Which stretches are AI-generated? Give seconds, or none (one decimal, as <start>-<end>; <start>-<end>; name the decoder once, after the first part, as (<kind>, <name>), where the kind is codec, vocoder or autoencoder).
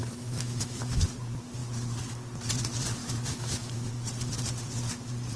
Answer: 0.0-1.1 (autoencoder, DAC-VAE); 3.0-3.9